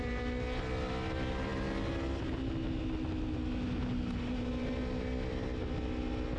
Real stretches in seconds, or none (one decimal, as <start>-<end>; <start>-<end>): 0.0-6.4